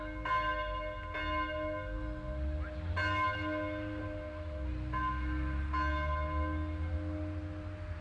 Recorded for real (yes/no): yes